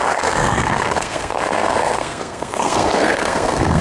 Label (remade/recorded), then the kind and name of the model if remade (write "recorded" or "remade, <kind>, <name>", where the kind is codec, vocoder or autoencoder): remade, codec, SNAC